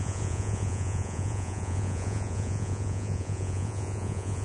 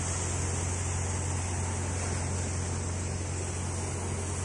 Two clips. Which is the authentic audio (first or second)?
second